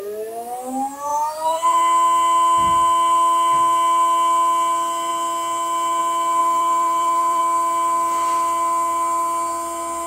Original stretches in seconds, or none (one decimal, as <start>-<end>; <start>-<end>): 0.0-1.1; 1.8-6.4; 7.4-10.1